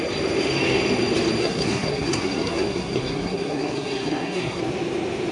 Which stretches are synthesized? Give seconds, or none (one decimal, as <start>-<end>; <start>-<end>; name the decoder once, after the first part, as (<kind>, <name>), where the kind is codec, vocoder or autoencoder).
1.4-4.6 (codec, SNAC)